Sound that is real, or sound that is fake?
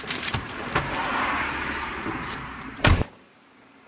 fake